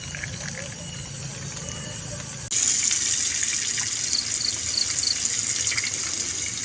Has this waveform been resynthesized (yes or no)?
no